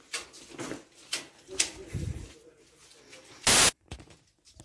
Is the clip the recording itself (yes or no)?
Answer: yes